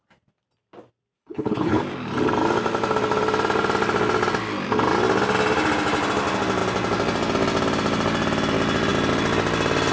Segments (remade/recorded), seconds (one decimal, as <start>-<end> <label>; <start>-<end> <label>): 0.0-1.2 recorded; 1.2-1.8 remade; 1.8-9.9 recorded

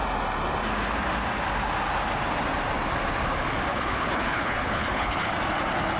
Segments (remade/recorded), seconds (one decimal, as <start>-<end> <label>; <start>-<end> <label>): 0.0-3.7 recorded; 3.7-5.3 remade; 5.3-6.0 recorded

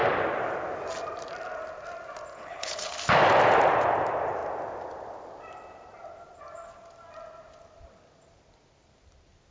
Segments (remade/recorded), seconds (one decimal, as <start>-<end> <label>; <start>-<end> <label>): 0.0-2.3 recorded; 2.3-2.9 remade; 2.9-9.5 recorded

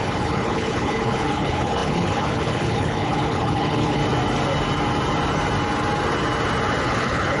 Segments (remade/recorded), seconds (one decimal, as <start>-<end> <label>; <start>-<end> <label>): 0.0-4.0 remade; 4.0-6.8 recorded; 6.8-7.4 remade

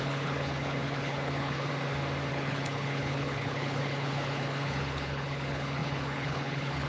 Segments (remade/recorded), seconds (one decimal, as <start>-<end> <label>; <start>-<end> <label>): 0.0-1.7 remade; 1.7-2.3 recorded; 2.3-6.9 remade

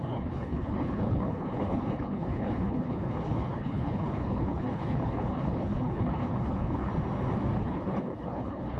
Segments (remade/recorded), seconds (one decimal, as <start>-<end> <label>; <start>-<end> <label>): 0.0-6.9 remade; 6.9-7.6 recorded; 7.6-8.8 remade

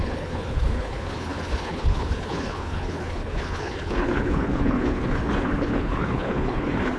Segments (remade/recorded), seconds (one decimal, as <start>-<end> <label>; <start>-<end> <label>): 0.0-7.0 remade

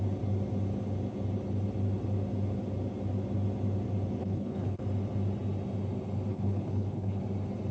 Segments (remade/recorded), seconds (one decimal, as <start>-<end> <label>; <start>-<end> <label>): 0.0-4.2 recorded; 4.2-4.8 remade; 4.8-6.3 recorded; 6.3-7.2 remade; 7.2-7.7 recorded